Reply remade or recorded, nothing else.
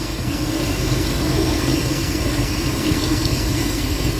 remade